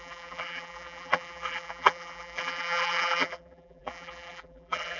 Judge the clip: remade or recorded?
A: remade